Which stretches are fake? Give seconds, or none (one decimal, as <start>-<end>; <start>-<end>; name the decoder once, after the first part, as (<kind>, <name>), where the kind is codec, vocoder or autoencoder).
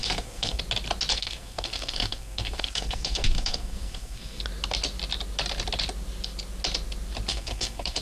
0.0-0.6 (codec, SNAC); 1.1-4.4; 7.3-8.0